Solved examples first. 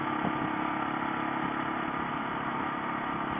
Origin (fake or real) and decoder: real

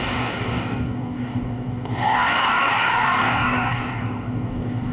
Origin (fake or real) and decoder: fake, codec, DAC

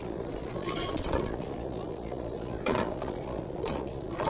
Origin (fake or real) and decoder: fake, vocoder, Vocos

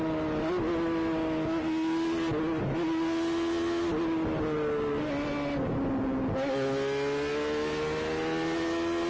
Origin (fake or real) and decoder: real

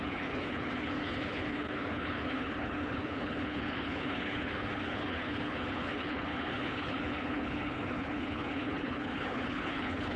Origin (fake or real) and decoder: fake, codec, HILCodec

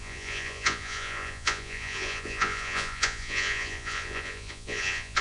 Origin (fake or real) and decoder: fake, vocoder, Vocos